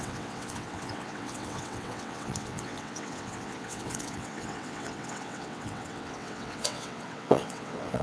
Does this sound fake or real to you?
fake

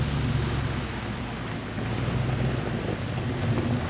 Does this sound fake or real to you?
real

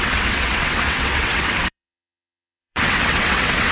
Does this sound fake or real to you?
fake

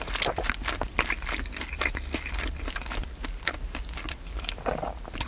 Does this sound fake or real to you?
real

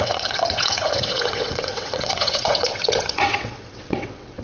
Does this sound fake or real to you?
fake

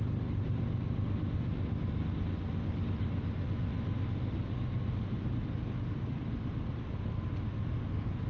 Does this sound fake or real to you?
real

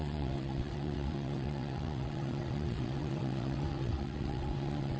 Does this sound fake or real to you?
fake